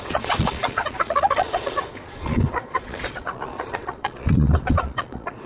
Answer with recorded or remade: remade